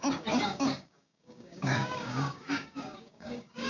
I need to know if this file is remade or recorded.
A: remade